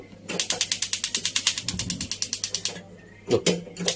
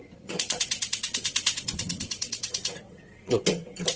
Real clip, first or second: first